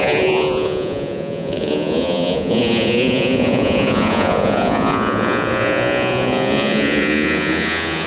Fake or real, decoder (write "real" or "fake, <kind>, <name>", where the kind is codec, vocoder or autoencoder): fake, vocoder, Vocos